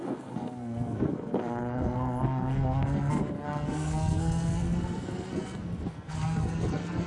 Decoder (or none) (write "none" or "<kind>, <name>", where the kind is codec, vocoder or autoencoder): codec, SNAC